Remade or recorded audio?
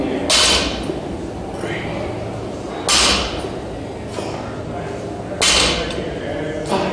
recorded